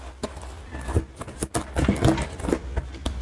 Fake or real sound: real